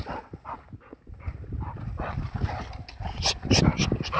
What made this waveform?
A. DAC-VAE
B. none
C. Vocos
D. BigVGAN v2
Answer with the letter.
B